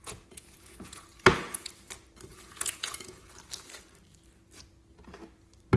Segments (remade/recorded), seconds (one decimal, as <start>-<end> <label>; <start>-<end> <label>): 0.0-1.9 remade; 1.9-2.3 recorded; 2.3-3.3 remade; 3.3-5.8 recorded